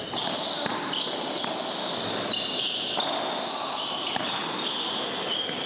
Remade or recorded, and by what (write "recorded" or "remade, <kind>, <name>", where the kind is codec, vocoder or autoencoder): recorded